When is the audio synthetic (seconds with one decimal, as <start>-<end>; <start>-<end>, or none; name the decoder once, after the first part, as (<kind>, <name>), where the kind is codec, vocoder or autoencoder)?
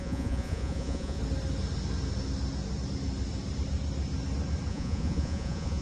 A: 0.0-1.2 (vocoder, Vocos); 4.7-5.8